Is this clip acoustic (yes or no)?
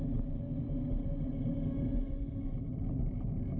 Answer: yes